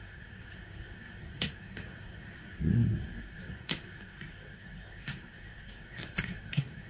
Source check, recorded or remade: remade